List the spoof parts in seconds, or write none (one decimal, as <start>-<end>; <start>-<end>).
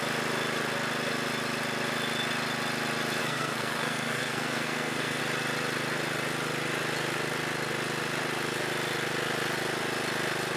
3.2-5.2